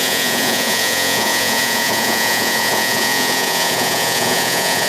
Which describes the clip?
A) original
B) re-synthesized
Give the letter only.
B